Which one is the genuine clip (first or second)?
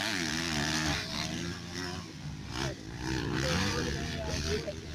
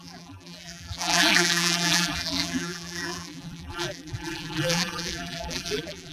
first